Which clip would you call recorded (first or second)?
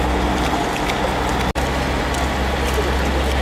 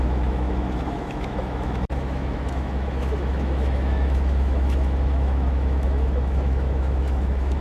first